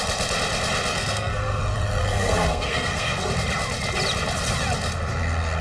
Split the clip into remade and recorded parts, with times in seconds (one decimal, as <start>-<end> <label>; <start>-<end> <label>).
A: 0.0-0.9 recorded; 0.9-1.6 remade; 1.6-2.0 recorded; 2.0-3.3 remade; 3.3-5.6 recorded